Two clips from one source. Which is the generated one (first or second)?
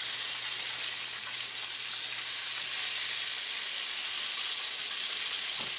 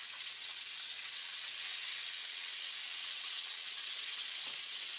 second